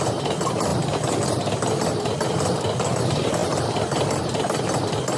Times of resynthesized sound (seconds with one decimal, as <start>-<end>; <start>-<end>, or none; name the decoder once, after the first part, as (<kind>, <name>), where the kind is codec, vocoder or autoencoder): none